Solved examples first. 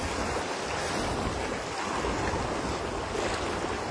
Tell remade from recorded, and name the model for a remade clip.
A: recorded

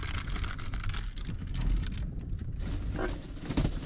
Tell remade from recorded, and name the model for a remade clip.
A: recorded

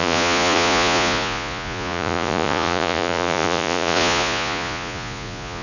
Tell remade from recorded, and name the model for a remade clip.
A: remade, vocoder, Vocos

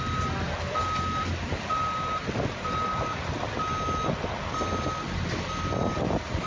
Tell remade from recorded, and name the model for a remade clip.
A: recorded